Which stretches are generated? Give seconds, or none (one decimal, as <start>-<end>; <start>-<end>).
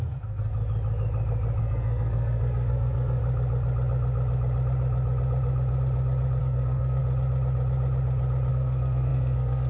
0.0-0.5; 1.6-3.2; 6.4-7.0; 8.5-9.7